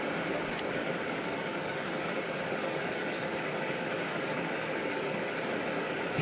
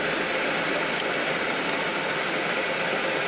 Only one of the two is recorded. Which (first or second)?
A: second